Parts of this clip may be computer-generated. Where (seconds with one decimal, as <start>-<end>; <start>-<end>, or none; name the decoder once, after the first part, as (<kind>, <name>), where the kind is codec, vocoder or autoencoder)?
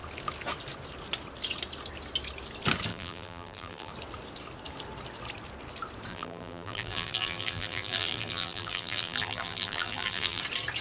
2.9-3.9 (vocoder, BigVGAN v2); 6.1-10.4